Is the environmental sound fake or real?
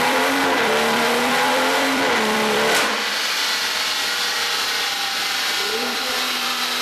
fake